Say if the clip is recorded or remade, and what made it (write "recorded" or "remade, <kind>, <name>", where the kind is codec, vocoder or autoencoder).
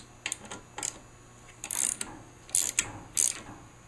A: recorded